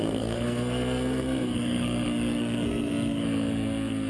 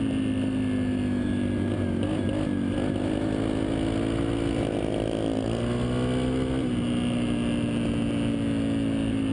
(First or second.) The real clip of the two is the second